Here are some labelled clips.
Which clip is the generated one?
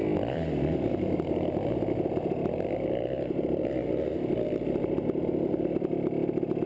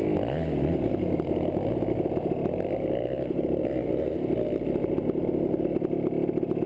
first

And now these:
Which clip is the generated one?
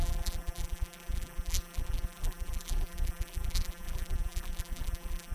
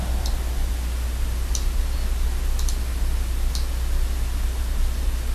first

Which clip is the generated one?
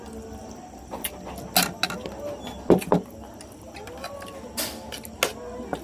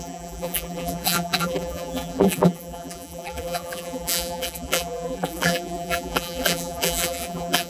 second